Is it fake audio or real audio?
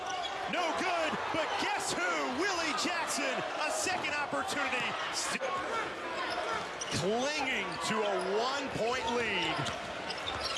real